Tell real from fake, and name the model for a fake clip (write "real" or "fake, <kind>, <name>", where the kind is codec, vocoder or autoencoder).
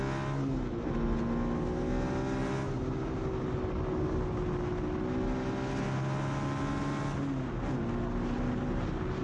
real